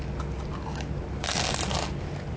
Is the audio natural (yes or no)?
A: yes